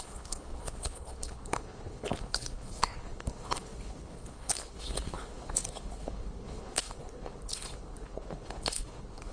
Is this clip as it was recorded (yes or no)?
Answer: no